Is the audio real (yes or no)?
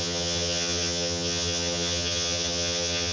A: no